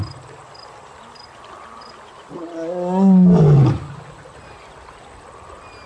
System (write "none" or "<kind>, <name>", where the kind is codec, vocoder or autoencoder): none